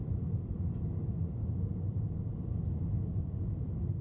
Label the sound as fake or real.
fake